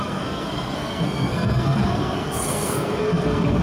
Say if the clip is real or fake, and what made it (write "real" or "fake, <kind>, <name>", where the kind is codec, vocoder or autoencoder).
fake, codec, SNAC